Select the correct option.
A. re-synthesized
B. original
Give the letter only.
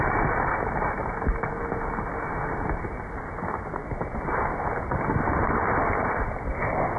B